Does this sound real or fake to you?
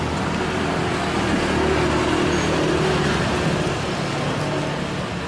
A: real